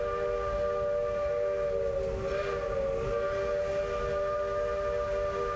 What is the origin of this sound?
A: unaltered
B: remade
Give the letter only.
A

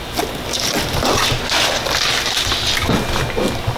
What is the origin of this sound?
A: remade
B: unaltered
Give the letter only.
B